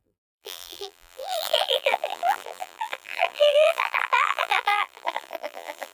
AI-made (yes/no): yes